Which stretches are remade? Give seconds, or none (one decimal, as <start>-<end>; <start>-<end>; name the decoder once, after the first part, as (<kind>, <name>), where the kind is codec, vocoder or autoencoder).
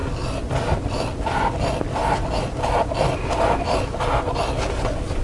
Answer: none